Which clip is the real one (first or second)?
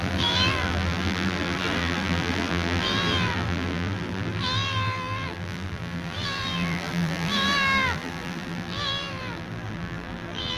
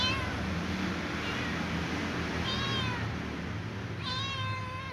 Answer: second